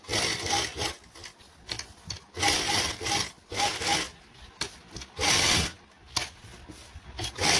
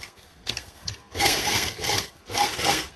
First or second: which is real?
first